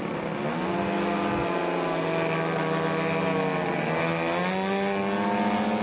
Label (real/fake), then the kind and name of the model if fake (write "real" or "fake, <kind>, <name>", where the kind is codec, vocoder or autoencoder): real